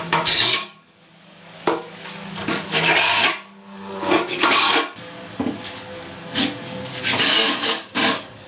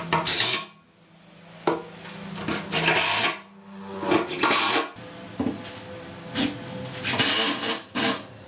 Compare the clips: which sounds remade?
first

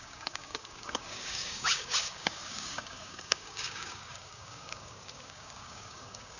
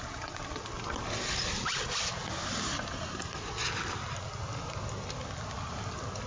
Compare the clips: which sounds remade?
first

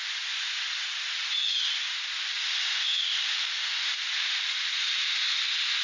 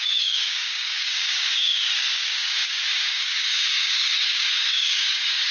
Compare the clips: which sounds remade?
second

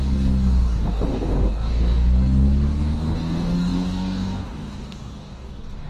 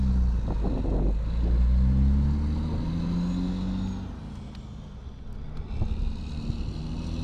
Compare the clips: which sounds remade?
first